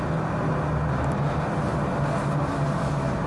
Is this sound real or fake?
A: real